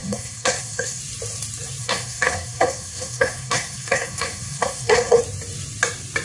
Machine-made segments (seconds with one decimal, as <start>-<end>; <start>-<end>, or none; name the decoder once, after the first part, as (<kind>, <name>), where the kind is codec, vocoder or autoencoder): 0.0-1.0 (codec, SNAC); 1.8-5.2